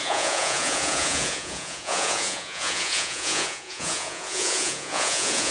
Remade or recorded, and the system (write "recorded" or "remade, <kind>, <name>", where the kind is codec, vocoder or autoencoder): remade, vocoder, Vocos